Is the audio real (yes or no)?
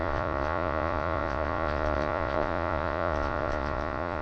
no